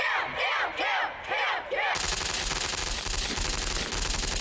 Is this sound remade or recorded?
recorded